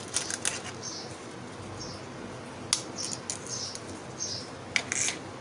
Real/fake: real